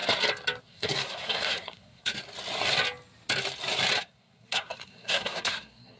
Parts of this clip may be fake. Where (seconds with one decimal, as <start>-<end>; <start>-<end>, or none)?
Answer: 0.6-2.1; 4.0-6.0

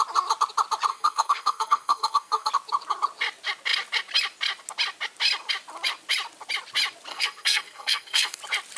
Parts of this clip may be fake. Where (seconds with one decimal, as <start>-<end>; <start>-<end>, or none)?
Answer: 0.9-2.5; 7.1-8.4

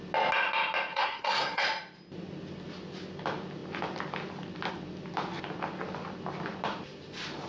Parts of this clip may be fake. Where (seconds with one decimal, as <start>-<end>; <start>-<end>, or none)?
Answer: 0.9-1.6

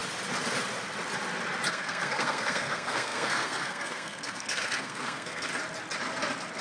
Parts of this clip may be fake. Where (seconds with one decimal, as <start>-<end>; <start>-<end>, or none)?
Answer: 1.7-5.5

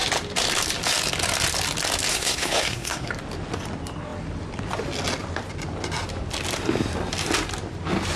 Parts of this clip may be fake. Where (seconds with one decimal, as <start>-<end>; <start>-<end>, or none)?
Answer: 2.1-3.1

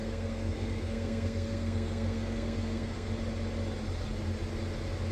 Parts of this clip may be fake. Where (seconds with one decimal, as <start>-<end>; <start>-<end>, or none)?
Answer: 0.0-3.1

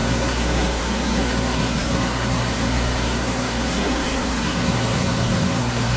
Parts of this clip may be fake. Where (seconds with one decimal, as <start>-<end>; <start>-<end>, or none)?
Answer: 0.0-6.0

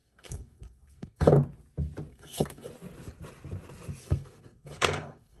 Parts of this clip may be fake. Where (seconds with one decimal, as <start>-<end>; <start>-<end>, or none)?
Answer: 0.0-1.3; 2.1-2.7; 4.0-5.4